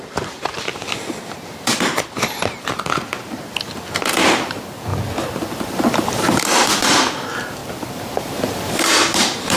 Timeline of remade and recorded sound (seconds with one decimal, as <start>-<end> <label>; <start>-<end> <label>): 0.0-4.9 remade; 4.9-5.7 recorded; 5.7-7.6 remade; 7.6-8.2 recorded; 8.2-9.6 remade